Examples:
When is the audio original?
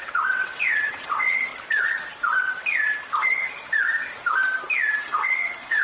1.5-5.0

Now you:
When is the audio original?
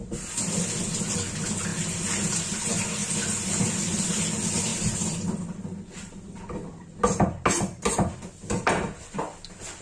0.0-9.8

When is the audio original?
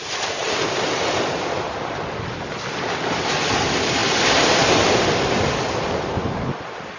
0.0-7.0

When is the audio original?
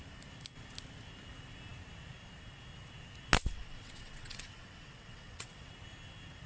0.0-3.5; 5.7-6.5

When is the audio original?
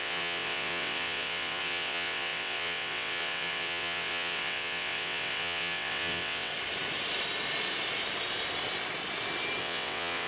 6.5-9.6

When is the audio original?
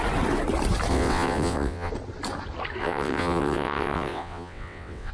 0.0-0.9; 1.9-2.8